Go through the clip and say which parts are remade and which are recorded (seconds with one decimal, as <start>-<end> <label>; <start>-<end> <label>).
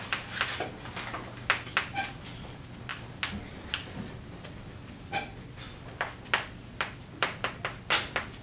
0.0-8.4 recorded